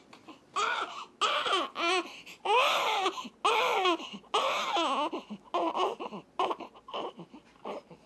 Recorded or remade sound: recorded